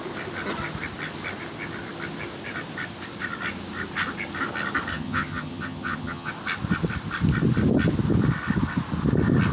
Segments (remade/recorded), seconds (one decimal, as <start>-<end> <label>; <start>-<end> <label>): 0.0-4.9 recorded; 4.9-6.3 remade; 6.3-9.5 recorded